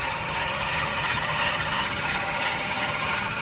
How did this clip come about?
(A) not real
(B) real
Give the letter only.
A